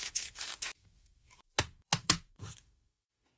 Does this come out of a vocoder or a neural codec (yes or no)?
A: yes